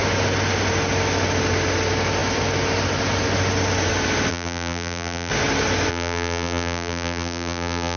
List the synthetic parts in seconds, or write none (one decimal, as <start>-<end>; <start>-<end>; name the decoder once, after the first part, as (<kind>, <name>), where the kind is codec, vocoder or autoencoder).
4.3-5.3 (vocoder, BigVGAN v2); 5.9-8.0